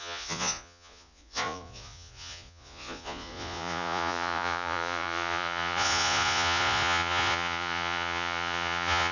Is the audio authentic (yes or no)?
no